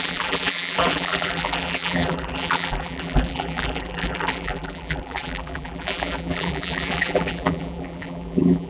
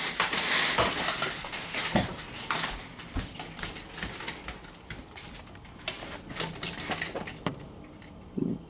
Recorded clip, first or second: second